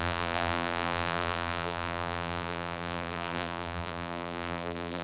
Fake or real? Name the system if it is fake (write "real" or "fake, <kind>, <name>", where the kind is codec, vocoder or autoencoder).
fake, vocoder, BigVGAN v2